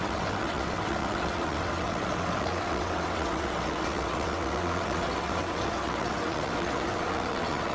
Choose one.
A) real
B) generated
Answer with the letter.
B